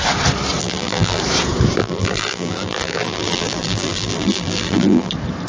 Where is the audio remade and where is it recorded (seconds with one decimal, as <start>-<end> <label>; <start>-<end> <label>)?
0.0-0.6 recorded; 0.6-1.2 remade; 1.2-1.8 recorded; 1.8-5.1 remade; 5.1-5.5 recorded